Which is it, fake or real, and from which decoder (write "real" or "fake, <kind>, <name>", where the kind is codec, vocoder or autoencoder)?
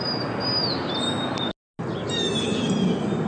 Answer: real